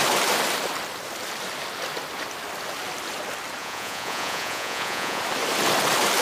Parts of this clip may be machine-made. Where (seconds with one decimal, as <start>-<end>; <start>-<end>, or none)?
3.6-5.2